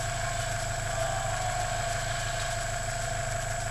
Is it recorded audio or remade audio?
recorded